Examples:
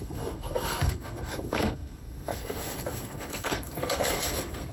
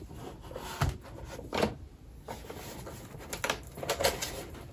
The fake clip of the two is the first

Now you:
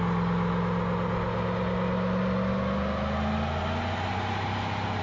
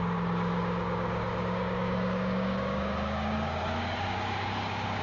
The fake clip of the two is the second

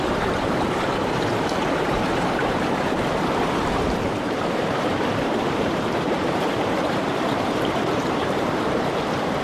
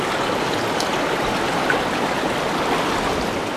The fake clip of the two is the first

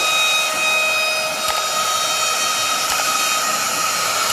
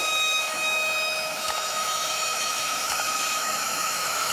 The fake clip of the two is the second